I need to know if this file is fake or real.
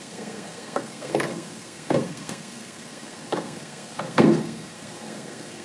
fake